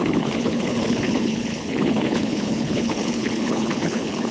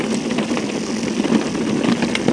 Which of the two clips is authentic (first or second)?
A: second